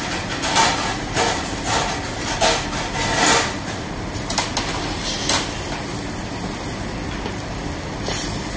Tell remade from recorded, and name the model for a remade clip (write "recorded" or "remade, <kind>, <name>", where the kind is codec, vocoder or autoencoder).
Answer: recorded